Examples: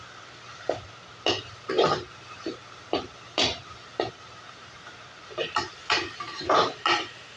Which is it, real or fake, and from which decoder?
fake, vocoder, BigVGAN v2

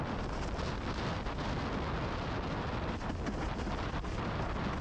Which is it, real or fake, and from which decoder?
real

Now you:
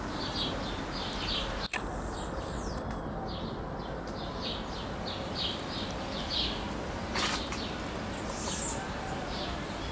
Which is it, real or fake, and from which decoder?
real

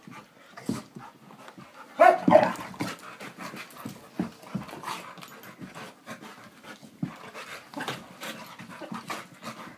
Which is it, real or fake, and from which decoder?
real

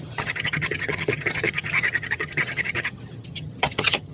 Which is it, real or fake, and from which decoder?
fake, vocoder, HiFi-GAN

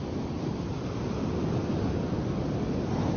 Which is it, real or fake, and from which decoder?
real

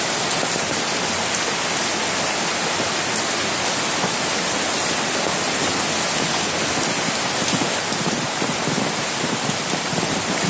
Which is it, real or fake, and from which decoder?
real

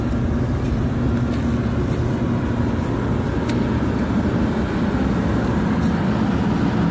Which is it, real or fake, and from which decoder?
real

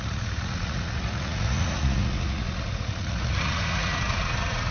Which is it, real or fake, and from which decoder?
fake, vocoder, Vocos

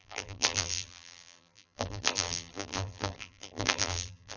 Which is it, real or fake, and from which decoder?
fake, vocoder, BigVGAN v2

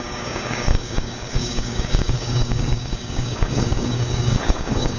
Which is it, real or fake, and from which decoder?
fake, codec, DAC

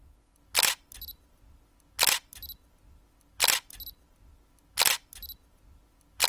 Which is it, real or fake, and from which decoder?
real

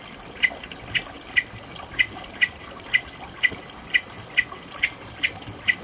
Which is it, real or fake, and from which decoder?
real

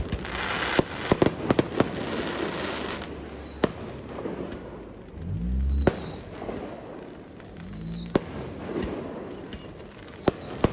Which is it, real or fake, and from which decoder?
real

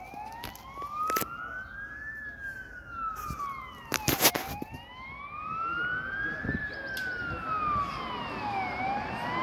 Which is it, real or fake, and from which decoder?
real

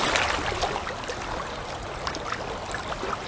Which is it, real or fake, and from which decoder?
real